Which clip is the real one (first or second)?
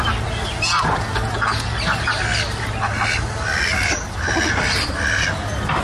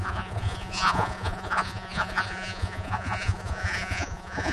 first